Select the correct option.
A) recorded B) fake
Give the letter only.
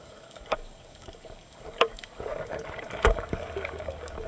B